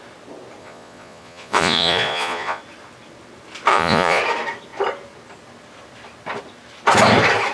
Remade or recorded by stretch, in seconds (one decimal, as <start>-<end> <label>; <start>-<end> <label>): 0.0-0.6 recorded; 0.6-2.6 remade; 2.6-3.7 recorded; 3.7-4.2 remade; 4.2-7.5 recorded

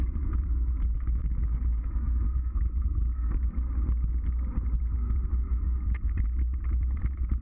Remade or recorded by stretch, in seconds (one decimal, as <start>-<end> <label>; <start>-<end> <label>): 0.0-1.2 recorded; 1.2-3.5 remade; 3.5-7.4 recorded

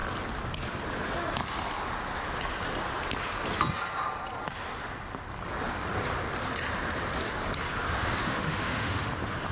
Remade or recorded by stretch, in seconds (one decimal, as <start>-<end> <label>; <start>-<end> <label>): 0.0-8.2 recorded; 8.2-9.1 remade; 9.1-9.5 recorded